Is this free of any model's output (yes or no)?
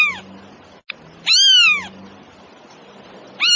yes